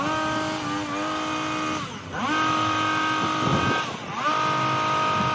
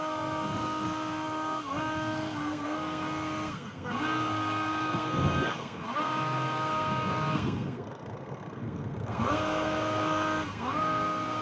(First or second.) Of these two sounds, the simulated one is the second